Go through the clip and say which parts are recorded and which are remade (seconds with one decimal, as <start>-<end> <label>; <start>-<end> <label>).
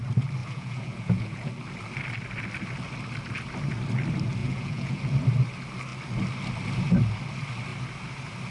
0.0-0.4 recorded; 0.4-1.5 remade; 1.5-4.4 recorded; 4.4-5.0 remade; 5.0-8.5 recorded